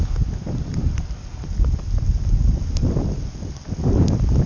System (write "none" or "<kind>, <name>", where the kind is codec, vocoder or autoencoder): none